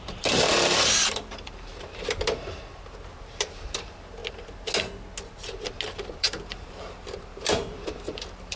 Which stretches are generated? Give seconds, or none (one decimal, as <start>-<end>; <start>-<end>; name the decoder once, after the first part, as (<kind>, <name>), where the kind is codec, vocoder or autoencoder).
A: 0.0-1.7 (vocoder, BigVGAN v2); 3.4-4.2; 5.9-8.6